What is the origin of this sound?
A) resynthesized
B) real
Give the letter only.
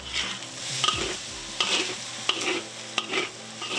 B